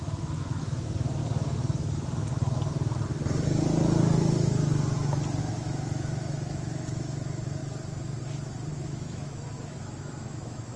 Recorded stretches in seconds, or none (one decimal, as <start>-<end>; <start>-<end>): 1.2-5.4; 7.6-8.7